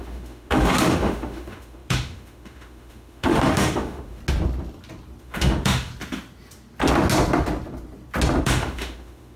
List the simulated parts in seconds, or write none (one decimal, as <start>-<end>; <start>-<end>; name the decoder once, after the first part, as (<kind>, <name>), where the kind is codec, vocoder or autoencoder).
0.0-4.2 (autoencoder, DAC-VAE); 5.2-5.9; 8.4-9.4